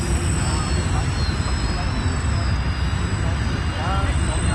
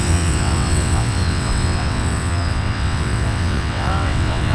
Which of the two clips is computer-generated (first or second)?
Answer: second